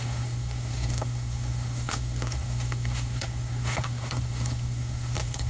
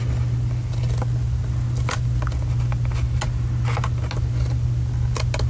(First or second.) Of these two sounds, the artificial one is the first